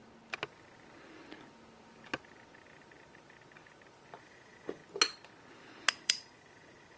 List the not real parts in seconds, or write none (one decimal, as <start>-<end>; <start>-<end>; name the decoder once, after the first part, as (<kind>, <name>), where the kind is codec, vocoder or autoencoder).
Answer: 4.2-4.8 (vocoder, Vocos); 5.9-7.0